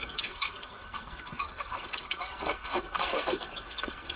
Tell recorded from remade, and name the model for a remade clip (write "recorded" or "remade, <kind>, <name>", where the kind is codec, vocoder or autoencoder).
remade, codec, SNAC